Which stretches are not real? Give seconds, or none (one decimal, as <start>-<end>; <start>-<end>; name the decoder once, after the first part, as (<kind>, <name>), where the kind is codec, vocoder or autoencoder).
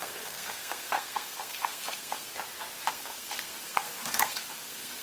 0.0-2.3 (codec, SNAC); 2.9-5.0